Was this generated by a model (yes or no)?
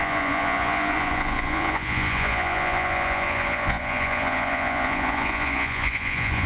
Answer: yes